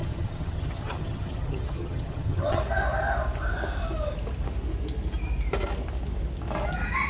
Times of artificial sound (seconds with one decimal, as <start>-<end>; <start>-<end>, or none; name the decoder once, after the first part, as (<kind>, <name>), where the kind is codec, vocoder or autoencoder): 0.0-2.6 (vocoder, HiFi-GAN)